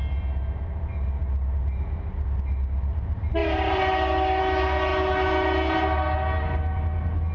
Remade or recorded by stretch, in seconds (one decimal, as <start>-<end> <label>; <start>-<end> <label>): 0.0-7.3 recorded